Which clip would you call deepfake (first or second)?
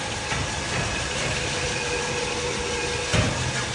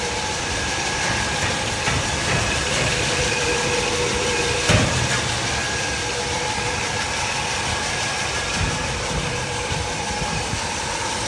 second